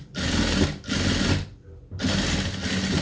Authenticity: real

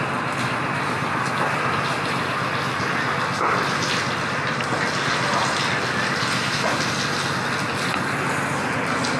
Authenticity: real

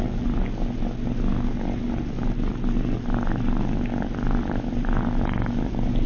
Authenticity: real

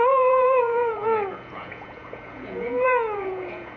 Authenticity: fake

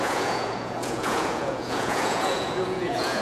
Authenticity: fake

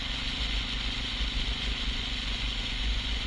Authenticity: fake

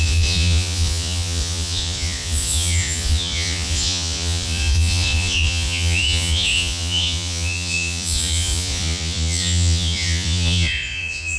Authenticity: fake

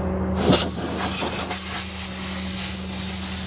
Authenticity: real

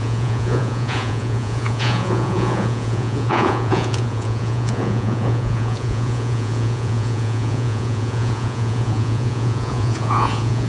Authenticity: fake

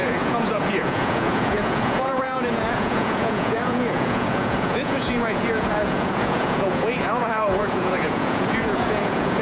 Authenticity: fake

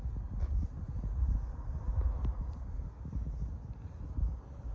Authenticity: real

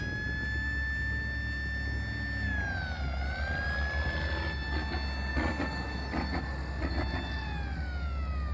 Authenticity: real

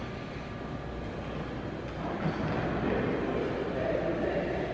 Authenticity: real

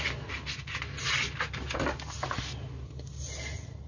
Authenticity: real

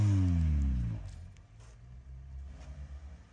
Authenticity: real